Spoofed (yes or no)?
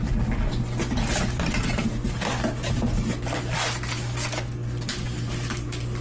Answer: no